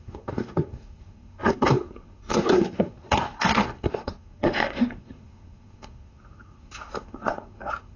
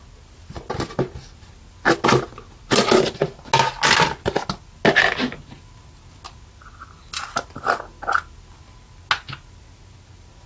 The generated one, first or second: first